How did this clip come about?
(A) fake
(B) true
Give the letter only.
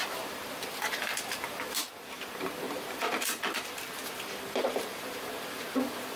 A